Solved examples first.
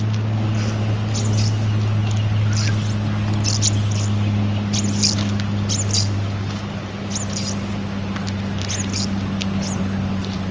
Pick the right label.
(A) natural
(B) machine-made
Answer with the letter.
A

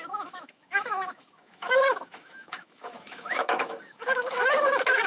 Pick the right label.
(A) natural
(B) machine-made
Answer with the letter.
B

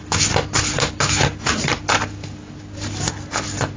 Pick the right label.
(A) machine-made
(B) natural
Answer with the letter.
B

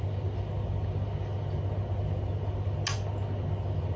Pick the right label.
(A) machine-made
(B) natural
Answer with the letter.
B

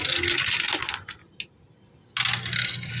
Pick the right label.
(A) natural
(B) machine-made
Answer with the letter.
A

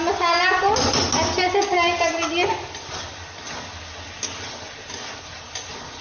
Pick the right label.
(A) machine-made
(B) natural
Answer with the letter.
B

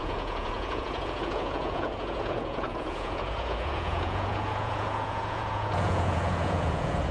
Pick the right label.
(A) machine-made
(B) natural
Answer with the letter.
A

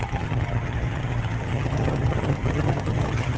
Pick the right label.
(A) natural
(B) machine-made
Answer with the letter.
B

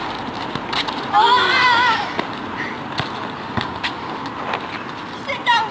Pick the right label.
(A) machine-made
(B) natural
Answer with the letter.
B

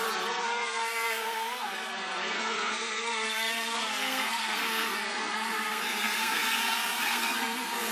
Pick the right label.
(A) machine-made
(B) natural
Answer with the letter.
A